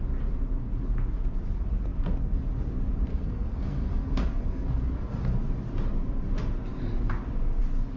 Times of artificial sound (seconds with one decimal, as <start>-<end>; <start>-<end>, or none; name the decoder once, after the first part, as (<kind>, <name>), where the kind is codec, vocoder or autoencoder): 3.1-5.3 (codec, SNAC)